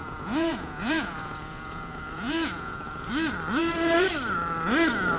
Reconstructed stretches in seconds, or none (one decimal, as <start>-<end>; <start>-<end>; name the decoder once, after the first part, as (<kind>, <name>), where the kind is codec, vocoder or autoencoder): 0.0-3.1 (vocoder, Vocos)